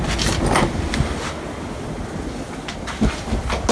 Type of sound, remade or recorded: recorded